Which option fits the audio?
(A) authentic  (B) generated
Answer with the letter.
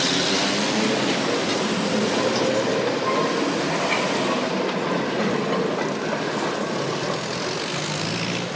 A